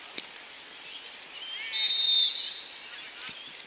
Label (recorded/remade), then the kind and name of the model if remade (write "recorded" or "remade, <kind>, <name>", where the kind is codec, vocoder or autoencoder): recorded